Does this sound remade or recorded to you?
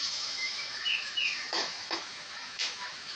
remade